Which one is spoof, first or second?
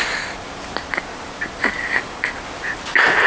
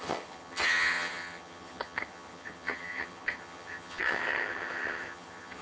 second